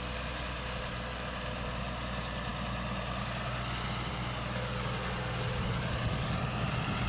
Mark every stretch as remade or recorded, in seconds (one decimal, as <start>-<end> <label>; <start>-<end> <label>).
0.0-7.1 recorded